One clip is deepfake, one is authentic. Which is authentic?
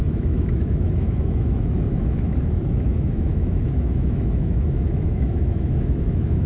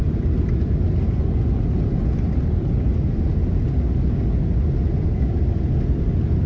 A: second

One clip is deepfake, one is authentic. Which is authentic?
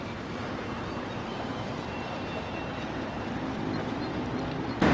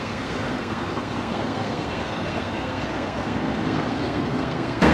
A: first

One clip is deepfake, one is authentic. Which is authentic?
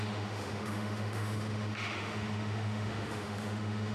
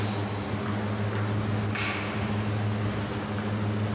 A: second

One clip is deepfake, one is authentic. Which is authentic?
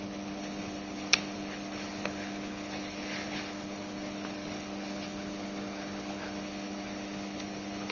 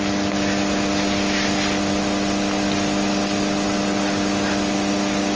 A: second